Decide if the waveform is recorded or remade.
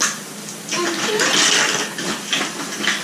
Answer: recorded